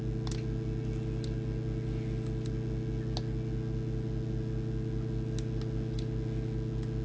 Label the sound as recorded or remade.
recorded